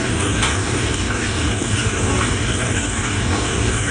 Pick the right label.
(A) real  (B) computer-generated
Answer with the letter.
B